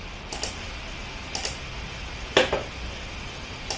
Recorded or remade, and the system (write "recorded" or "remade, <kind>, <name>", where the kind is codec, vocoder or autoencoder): recorded